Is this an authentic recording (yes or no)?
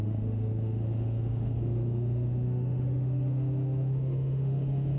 no